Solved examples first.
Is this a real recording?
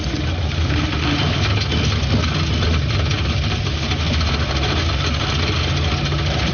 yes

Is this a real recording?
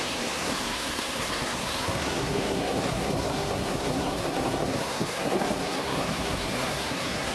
no